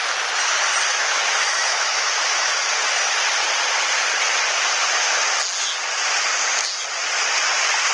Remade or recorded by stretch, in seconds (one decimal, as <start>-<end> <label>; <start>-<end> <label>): 0.0-0.9 recorded; 0.9-2.7 remade; 2.7-7.9 recorded